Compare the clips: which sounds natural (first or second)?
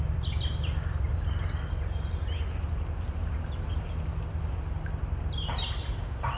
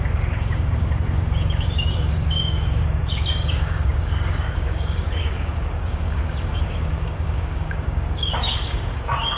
first